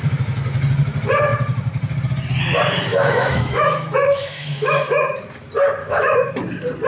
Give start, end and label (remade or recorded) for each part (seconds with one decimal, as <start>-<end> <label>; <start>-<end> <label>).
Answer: 0.0-2.9 recorded; 2.9-5.2 remade; 5.2-5.8 recorded; 5.8-6.3 remade; 6.3-6.9 recorded